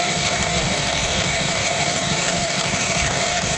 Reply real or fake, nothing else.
fake